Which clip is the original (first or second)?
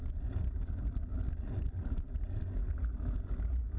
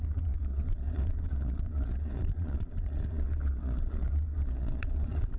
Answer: first